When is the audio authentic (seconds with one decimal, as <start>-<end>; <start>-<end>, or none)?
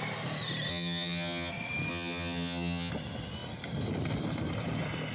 0.0-0.7; 1.5-1.9; 2.9-5.1